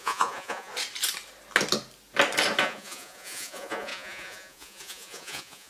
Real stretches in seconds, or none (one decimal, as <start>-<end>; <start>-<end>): 0.7-2.6